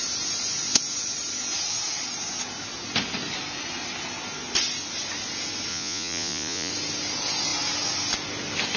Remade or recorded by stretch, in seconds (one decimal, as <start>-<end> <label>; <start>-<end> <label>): 0.0-5.7 recorded; 5.7-6.7 remade; 6.7-8.8 recorded